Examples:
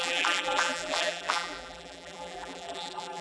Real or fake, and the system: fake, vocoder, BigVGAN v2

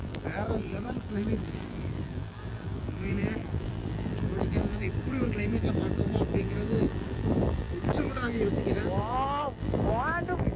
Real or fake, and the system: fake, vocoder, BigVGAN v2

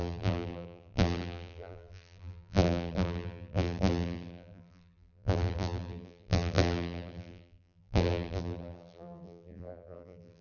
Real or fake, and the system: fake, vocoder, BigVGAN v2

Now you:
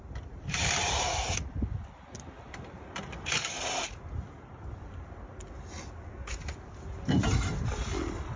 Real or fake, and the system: real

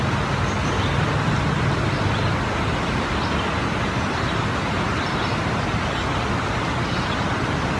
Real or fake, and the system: real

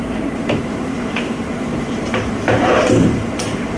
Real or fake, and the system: fake, vocoder, BigVGAN v2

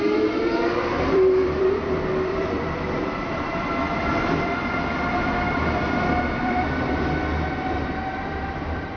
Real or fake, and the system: fake, vocoder, BigVGAN v2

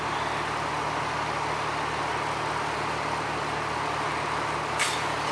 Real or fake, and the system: real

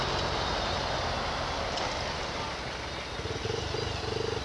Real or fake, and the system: real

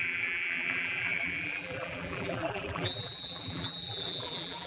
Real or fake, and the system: fake, vocoder, BigVGAN v2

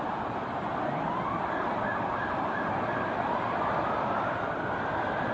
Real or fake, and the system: fake, vocoder, BigVGAN v2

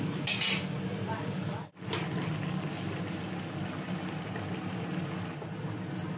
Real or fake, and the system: real